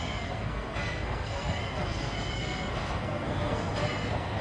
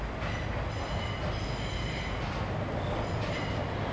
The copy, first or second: first